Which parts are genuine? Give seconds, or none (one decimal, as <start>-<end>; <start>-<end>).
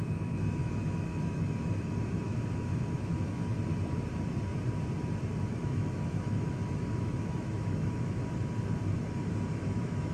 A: 3.7-5.5; 8.2-9.5